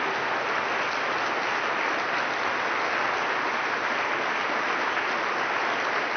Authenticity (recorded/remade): recorded